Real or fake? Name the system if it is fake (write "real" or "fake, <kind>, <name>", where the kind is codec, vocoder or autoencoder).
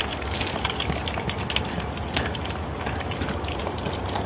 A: real